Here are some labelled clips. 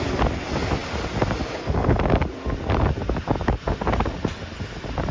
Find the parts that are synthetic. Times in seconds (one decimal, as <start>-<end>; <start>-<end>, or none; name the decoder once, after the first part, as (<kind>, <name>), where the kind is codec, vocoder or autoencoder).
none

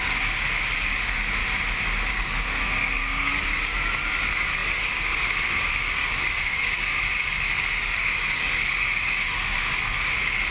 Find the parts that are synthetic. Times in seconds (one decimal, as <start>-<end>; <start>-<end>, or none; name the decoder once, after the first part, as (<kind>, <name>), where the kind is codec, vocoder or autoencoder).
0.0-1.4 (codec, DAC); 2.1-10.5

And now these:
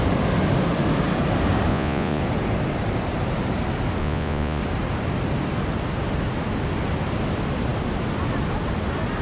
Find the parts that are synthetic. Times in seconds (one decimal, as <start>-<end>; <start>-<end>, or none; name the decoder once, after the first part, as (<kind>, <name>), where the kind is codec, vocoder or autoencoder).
1.7-2.2 (vocoder, Vocos); 4.0-4.6

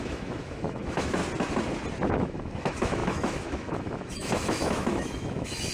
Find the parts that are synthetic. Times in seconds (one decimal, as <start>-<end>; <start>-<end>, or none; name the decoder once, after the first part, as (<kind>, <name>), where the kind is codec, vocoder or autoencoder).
0.0-1.2 (autoencoder, DAC-VAE); 2.1-5.7

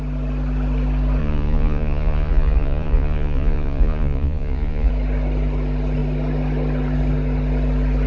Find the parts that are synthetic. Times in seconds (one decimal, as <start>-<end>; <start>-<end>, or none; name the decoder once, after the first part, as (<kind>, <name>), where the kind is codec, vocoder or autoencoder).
1.2-4.9 (vocoder, Vocos)

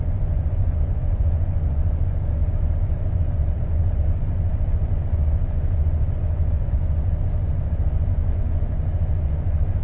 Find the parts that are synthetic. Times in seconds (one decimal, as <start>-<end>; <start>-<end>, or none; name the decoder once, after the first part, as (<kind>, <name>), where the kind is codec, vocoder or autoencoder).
0.0-9.8 (vocoder, Vocos)

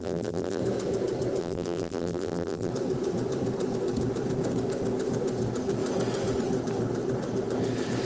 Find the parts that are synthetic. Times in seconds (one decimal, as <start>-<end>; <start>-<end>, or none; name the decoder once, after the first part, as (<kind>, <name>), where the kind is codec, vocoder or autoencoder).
0.0-0.6 (vocoder, BigVGAN v2); 1.4-2.7